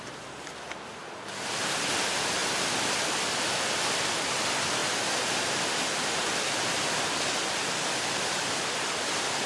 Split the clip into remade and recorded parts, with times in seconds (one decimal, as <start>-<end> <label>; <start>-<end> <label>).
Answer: 0.0-4.8 remade; 4.8-7.7 recorded; 7.7-9.5 remade